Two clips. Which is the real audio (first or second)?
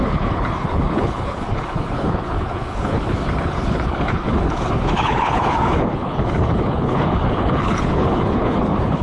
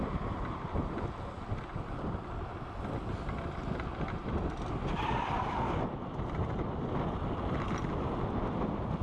second